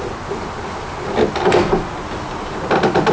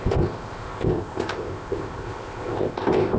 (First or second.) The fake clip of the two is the second